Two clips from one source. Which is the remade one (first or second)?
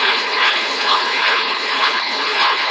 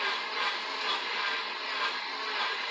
first